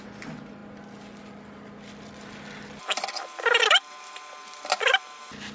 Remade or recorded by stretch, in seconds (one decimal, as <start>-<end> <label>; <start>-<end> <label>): 0.0-5.5 recorded